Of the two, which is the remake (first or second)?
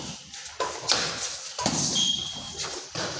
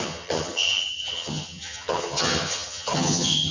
second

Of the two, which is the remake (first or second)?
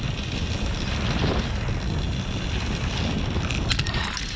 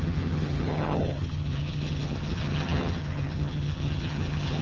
second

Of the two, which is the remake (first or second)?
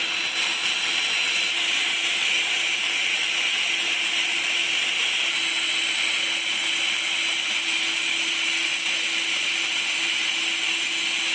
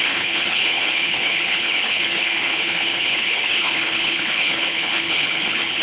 second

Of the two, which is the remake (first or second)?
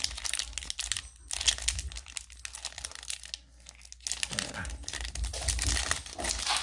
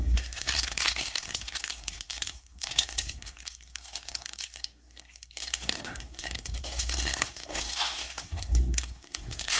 second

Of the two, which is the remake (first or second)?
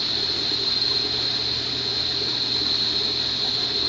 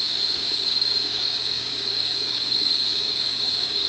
second